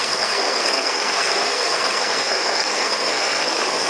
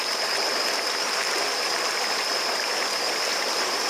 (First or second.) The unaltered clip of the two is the second